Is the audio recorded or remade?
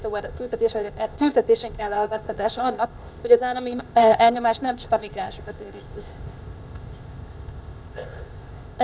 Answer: remade